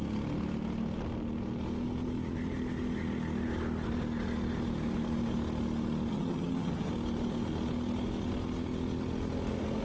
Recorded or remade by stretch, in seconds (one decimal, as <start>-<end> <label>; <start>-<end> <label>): 0.0-6.1 recorded; 6.1-6.9 remade; 6.9-9.8 recorded